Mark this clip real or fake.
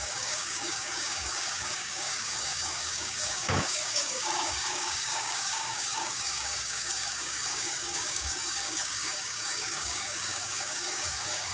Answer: fake